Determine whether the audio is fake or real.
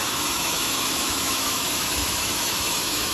fake